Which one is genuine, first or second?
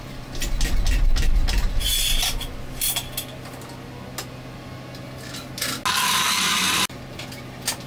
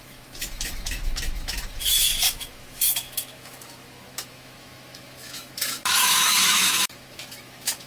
first